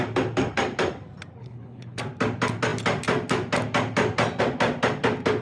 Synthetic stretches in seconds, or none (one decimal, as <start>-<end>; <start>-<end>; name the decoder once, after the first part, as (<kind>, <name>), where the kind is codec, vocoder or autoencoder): 1.4-2.0 (codec, HILCodec)